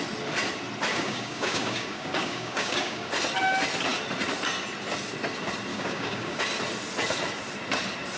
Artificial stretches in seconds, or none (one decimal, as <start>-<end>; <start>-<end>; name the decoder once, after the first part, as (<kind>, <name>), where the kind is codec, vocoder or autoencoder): 0.9-3.1 (codec, DAC); 5.7-6.4